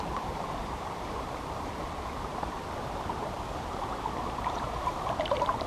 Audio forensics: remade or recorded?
remade